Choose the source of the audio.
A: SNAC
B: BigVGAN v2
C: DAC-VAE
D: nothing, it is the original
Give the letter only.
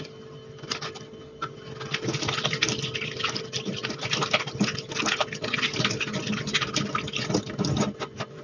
D